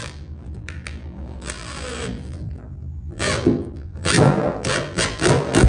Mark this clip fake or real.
fake